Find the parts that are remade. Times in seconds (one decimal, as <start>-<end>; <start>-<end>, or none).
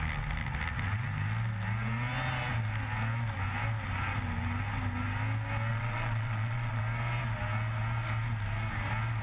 5.7-6.8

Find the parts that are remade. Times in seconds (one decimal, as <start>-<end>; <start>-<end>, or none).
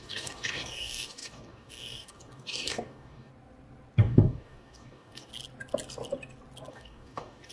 0.0-3.3; 4.0-5.3; 6.7-7.5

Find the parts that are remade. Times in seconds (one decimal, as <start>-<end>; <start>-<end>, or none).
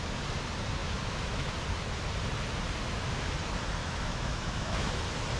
0.8-1.5; 3.8-5.0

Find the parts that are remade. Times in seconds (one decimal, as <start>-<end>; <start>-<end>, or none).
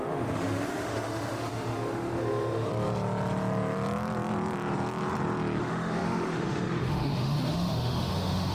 0.0-2.7; 5.6-8.5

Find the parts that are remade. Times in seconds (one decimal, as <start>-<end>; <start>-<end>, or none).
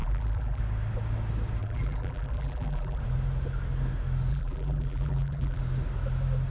0.0-0.6; 1.6-3.0; 4.3-5.6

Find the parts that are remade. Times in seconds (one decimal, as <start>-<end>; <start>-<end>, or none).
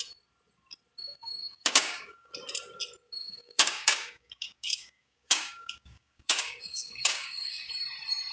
1.4-2.3; 3.2-7.7